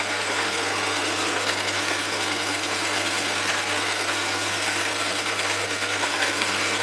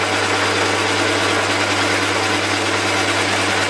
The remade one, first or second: first